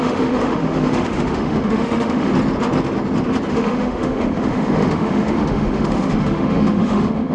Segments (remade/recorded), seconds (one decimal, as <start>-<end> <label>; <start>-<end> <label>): 0.0-2.3 remade; 2.3-3.5 recorded; 3.5-7.3 remade